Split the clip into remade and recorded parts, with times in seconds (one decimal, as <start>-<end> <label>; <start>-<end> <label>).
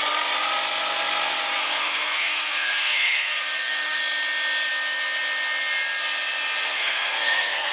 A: 0.0-1.6 recorded; 1.6-4.0 remade; 4.0-6.7 recorded; 6.7-7.7 remade